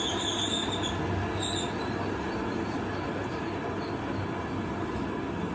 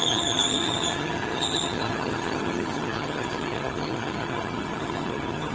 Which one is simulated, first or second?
second